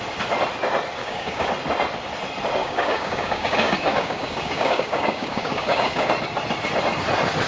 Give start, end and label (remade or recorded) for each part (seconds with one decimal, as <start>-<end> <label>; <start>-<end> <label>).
0.0-1.0 recorded; 1.0-1.5 remade; 1.5-2.6 recorded; 2.6-6.1 remade; 6.1-7.5 recorded